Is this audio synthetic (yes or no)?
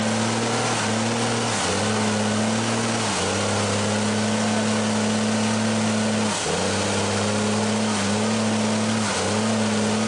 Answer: no